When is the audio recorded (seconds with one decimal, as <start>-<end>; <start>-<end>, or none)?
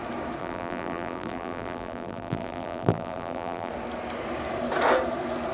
0.0-0.4; 3.7-5.5